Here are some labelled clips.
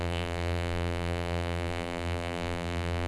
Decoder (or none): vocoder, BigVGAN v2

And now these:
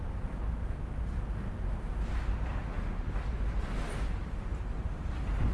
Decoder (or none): vocoder, BigVGAN v2